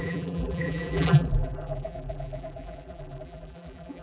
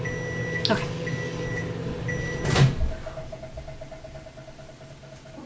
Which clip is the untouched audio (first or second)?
second